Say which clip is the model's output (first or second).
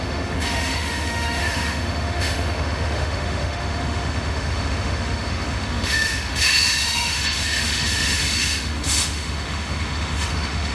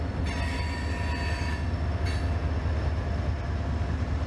first